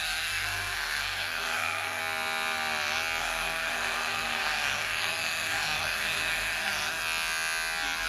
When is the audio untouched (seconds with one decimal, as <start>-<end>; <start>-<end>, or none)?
2.0-3.2; 7.0-8.1